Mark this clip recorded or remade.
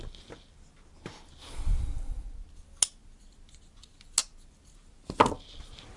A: recorded